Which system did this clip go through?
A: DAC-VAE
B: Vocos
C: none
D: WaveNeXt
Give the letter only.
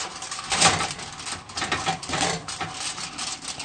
C